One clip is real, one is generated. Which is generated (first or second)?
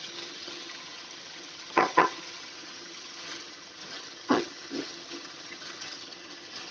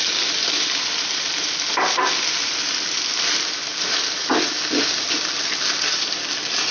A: first